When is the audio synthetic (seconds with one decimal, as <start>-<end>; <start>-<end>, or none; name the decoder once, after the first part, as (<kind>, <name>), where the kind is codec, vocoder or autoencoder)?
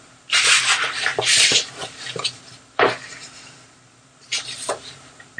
0.0-5.4 (vocoder, BigVGAN v2)